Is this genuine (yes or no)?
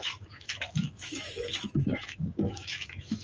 no